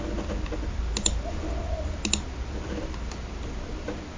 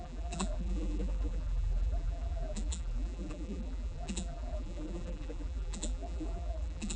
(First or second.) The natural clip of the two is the first